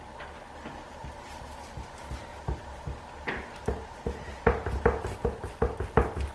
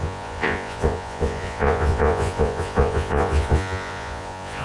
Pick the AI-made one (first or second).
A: second